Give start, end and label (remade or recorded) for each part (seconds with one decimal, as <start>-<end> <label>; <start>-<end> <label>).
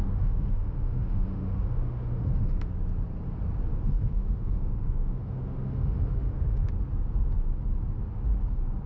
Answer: 0.0-2.7 remade; 2.7-3.7 recorded; 3.7-6.7 remade; 6.7-8.9 recorded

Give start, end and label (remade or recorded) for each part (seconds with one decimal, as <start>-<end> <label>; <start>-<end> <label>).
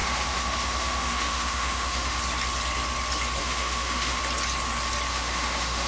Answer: 0.0-2.2 remade; 2.2-3.4 recorded; 3.4-4.2 remade; 4.2-5.1 recorded; 5.1-5.9 remade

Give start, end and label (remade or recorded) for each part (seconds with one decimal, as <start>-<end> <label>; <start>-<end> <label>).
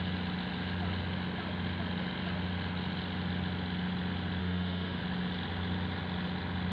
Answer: 0.0-4.4 recorded; 4.4-5.0 remade; 5.0-6.7 recorded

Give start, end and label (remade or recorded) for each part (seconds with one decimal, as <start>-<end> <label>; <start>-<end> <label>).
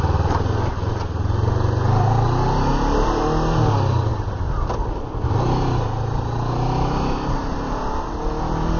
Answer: 0.0-8.8 recorded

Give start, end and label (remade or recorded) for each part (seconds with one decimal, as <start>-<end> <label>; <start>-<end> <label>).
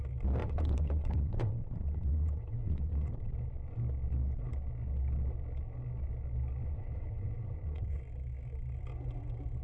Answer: 0.0-0.4 recorded; 0.4-3.3 remade; 3.3-6.6 recorded; 6.6-8.0 remade; 8.0-9.6 recorded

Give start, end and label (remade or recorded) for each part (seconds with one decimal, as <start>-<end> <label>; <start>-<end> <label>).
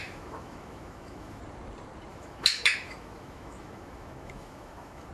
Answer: 0.0-1.4 remade; 1.4-2.1 recorded; 2.1-5.1 remade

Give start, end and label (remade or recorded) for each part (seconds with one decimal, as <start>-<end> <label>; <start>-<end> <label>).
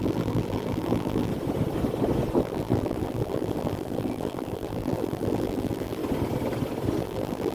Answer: 0.0-1.3 remade; 1.3-2.4 recorded; 2.4-6.0 remade; 6.0-7.0 recorded; 7.0-7.5 remade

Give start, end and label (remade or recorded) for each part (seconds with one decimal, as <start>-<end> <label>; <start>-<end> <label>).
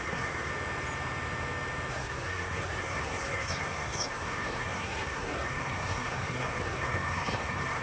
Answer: 0.0-0.5 remade; 0.5-1.9 recorded; 1.9-7.8 remade